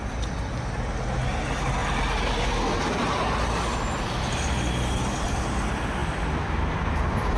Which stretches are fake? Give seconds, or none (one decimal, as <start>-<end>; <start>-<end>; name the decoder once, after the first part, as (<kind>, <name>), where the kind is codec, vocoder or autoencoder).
none